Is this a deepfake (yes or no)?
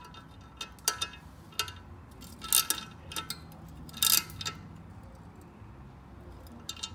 no